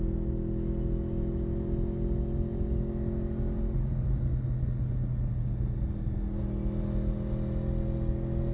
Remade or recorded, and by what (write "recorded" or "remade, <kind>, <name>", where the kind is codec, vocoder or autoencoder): recorded